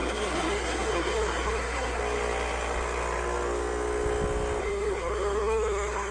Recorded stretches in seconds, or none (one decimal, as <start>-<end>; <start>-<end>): 2.0-4.6